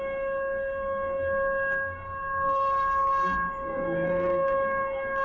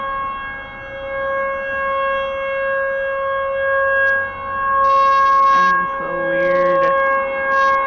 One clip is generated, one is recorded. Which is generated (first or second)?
first